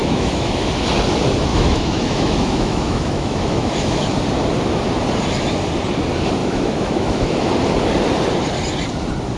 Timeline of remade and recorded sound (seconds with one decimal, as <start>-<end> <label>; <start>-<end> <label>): 0.0-0.7 remade; 0.7-1.5 recorded; 1.5-4.0 remade; 4.0-6.4 recorded; 6.4-7.3 remade; 7.3-9.4 recorded